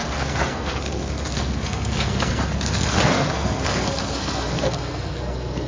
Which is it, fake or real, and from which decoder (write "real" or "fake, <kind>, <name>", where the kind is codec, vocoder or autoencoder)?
fake, codec, SNAC